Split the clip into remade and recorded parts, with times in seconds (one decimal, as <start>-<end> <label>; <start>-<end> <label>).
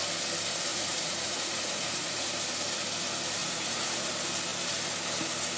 0.0-0.7 recorded; 0.7-2.3 remade; 2.3-3.4 recorded; 3.4-4.1 remade; 4.1-5.6 recorded